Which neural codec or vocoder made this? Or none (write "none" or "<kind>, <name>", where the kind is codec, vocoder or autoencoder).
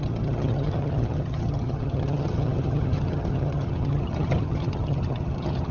vocoder, HiFi-GAN